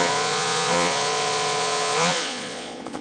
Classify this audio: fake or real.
fake